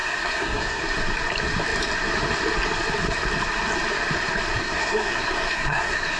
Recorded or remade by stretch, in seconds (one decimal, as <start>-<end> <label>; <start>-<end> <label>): 0.0-0.8 remade; 0.8-4.6 recorded; 4.6-6.2 remade